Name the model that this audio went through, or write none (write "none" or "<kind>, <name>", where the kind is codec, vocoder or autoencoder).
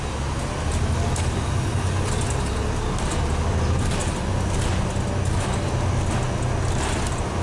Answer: none